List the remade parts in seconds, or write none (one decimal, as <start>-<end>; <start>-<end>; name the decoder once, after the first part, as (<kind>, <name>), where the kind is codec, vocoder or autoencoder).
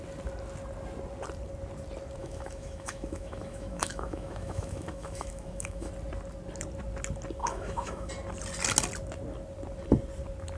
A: 2.2-5.9 (autoencoder, DAC-VAE); 7.4-8.1